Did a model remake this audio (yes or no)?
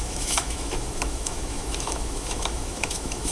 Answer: yes